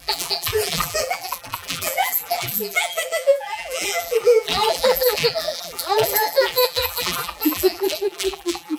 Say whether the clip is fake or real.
fake